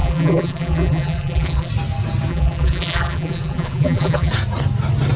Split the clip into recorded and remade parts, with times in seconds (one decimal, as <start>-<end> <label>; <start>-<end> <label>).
0.0-1.7 remade; 1.7-2.3 recorded; 2.3-4.3 remade; 4.3-5.2 recorded